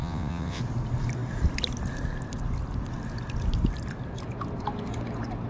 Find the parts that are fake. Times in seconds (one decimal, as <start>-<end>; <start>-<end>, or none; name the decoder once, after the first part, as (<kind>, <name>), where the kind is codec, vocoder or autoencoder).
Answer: 0.0-0.6 (vocoder, WaveNeXt)